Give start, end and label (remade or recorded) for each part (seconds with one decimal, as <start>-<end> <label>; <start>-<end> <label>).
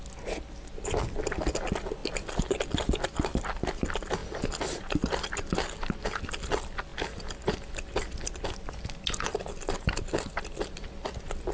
0.0-11.5 recorded